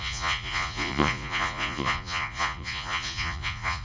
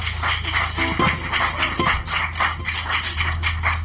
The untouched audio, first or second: second